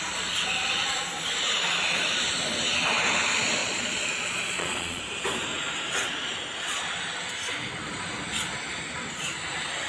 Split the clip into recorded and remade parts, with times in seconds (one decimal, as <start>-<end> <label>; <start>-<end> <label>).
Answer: 0.0-3.6 recorded; 3.6-5.0 remade; 5.0-9.9 recorded